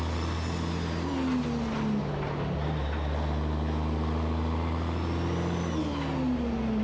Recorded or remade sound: recorded